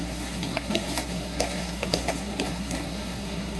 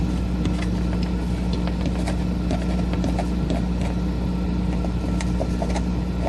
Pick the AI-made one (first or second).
first